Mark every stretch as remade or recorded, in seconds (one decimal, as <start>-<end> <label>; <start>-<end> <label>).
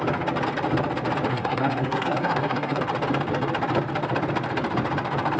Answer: 0.0-1.3 recorded; 1.3-2.8 remade; 2.8-5.4 recorded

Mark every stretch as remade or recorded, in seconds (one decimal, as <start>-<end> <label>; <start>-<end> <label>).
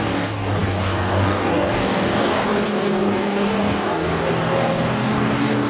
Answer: 0.0-5.7 remade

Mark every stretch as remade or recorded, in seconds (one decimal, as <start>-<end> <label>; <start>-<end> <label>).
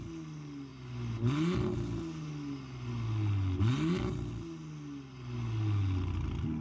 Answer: 0.0-6.6 recorded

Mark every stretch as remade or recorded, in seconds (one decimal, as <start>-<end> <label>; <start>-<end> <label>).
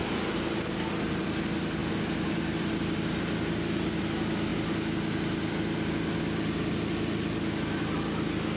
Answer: 0.0-8.6 recorded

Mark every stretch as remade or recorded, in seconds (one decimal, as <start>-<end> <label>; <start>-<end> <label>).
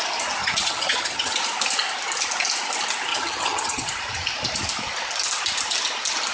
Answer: 0.0-0.4 recorded; 0.4-1.3 remade; 1.3-3.1 recorded; 3.1-3.9 remade; 3.9-6.3 recorded